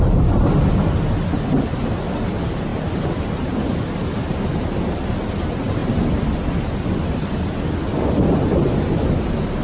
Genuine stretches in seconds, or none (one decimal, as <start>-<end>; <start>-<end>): 0.0-9.6